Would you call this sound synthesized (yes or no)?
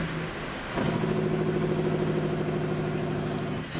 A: no